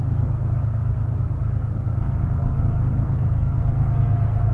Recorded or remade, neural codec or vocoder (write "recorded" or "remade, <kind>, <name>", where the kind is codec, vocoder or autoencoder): remade, codec, SNAC